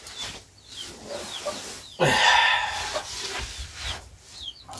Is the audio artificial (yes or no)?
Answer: no